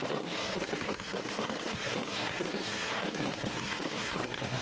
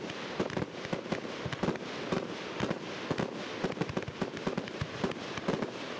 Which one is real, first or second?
second